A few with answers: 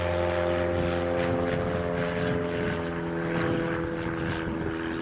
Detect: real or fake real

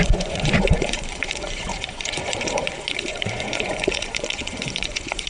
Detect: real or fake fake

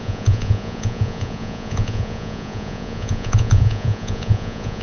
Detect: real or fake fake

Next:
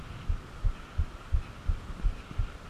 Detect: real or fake real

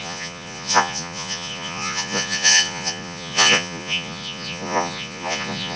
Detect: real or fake fake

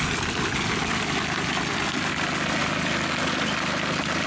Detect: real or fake real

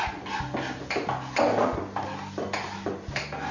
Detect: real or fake real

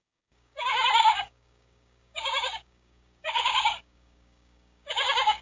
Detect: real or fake fake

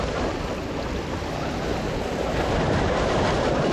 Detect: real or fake real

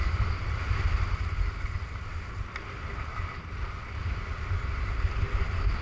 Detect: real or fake real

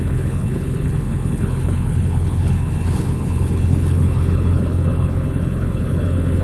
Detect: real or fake fake